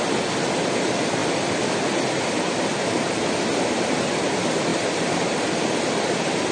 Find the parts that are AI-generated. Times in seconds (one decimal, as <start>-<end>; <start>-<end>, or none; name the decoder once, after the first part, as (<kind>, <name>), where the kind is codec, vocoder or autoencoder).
none